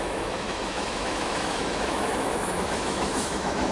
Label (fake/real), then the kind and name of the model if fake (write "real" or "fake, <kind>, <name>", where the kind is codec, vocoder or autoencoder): fake, autoencoder, DAC-VAE